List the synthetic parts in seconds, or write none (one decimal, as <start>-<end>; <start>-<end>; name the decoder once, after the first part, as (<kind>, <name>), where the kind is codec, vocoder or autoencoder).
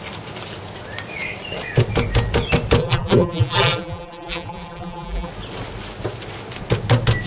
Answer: 2.8-5.3 (vocoder, BigVGAN v2)